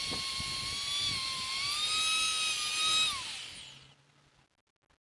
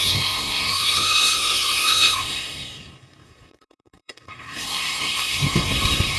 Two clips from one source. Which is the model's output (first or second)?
second